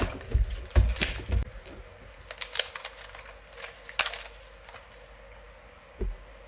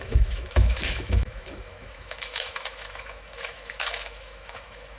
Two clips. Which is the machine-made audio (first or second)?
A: second